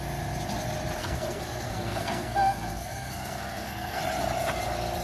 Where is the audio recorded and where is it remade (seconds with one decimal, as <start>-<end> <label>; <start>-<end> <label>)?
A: 0.0-1.0 recorded; 1.0-4.0 remade; 4.0-5.0 recorded

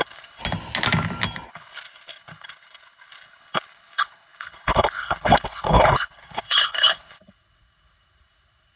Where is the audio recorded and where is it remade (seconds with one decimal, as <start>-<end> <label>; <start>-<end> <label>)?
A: 0.0-0.4 remade; 0.4-1.5 recorded; 1.5-8.8 remade